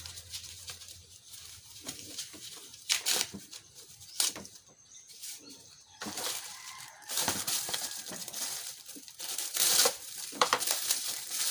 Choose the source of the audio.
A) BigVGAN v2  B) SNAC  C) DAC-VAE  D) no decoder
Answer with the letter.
A